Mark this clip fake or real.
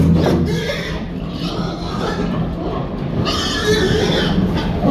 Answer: real